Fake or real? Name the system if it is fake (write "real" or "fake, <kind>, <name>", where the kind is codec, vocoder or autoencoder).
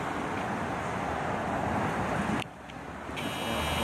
real